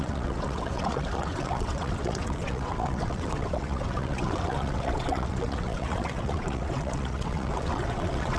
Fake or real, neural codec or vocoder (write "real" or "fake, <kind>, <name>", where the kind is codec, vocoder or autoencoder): fake, vocoder, WaveNeXt